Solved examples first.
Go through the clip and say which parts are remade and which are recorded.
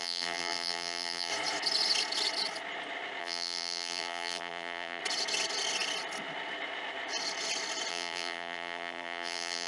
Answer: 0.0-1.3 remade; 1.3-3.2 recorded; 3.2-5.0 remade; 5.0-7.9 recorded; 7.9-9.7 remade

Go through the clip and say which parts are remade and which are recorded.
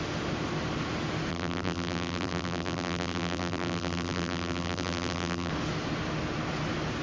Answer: 0.0-1.3 recorded; 1.3-5.5 remade; 5.5-7.0 recorded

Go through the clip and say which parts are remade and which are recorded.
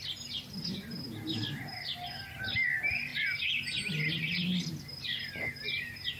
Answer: 0.0-6.2 remade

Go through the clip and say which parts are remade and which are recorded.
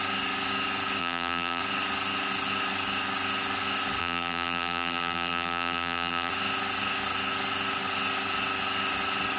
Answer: 0.0-1.0 recorded; 1.0-1.6 remade; 1.6-4.0 recorded; 4.0-6.3 remade; 6.3-9.4 recorded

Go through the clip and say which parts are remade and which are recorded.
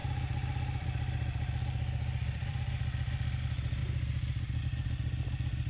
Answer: 0.0-3.4 remade; 3.4-3.8 recorded; 3.8-4.6 remade; 4.6-5.7 recorded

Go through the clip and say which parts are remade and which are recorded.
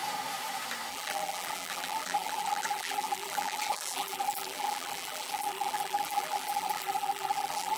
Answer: 0.0-0.9 recorded; 0.9-7.8 remade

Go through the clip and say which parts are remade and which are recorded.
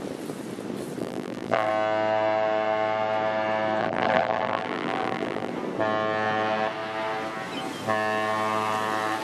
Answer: 0.0-1.0 recorded; 1.0-1.7 remade; 1.7-3.8 recorded; 3.8-5.5 remade; 5.5-9.2 recorded